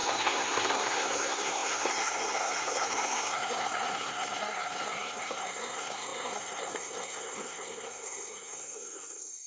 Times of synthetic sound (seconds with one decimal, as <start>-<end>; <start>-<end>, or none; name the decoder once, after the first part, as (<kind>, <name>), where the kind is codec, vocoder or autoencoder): 0.0-9.5 (codec, SNAC)